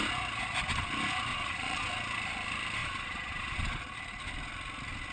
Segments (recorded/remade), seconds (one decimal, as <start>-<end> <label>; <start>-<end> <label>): 0.0-1.3 recorded; 1.3-1.9 remade; 1.9-2.8 recorded; 2.8-3.8 remade; 3.8-5.1 recorded